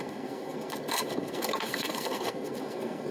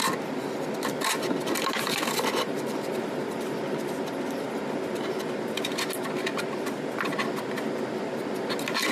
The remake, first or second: first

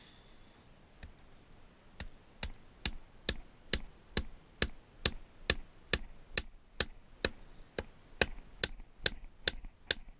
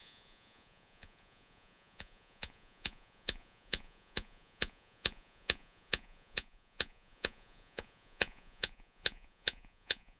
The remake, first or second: second